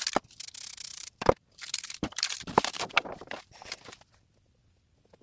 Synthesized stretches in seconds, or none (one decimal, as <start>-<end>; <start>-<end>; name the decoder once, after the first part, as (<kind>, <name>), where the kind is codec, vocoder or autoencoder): 0.9-4.0 (vocoder, BigVGAN v2)